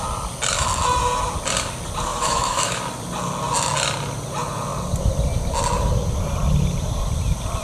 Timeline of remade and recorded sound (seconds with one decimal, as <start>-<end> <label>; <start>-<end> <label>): 0.0-2.1 recorded; 2.1-2.8 remade; 2.8-7.6 recorded